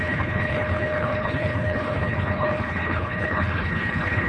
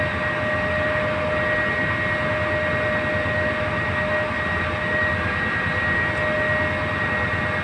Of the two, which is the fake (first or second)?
first